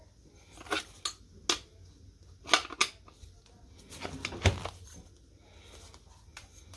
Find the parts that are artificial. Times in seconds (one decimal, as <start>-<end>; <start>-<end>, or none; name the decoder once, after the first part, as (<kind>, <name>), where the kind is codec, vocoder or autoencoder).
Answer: none